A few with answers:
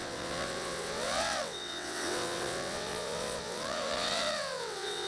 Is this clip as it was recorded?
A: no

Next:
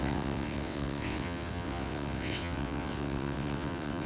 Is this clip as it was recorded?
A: no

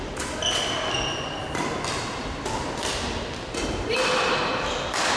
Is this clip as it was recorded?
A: yes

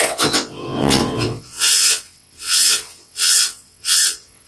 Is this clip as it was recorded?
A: no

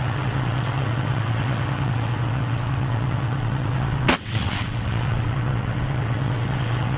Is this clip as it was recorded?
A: no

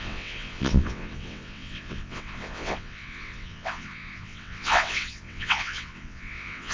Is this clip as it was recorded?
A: no